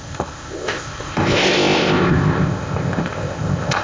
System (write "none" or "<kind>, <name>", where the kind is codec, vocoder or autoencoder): codec, ZipCodec